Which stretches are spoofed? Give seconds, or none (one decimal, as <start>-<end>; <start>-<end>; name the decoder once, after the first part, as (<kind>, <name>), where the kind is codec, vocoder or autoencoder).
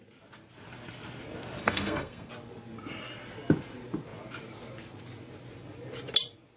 1.6-2.3 (codec, SNAC)